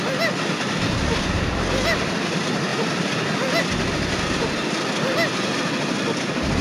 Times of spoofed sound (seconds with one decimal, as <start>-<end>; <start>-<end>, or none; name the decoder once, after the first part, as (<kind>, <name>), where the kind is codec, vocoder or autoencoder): none